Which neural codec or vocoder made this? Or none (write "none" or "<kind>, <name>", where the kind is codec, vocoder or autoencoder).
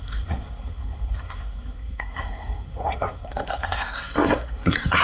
codec, SNAC